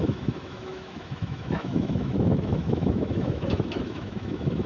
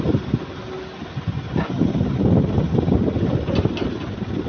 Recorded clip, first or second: second